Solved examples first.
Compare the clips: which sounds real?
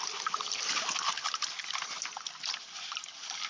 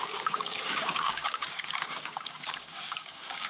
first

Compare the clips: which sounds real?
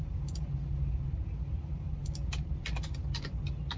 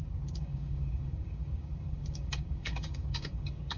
first